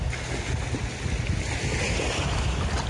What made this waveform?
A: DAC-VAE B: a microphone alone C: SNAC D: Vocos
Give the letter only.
B